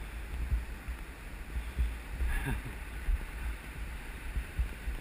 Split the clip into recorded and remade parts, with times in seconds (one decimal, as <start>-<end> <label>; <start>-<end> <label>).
0.0-3.1 recorded; 3.1-5.0 remade